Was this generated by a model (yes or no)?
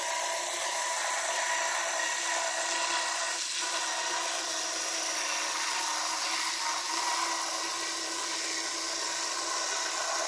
no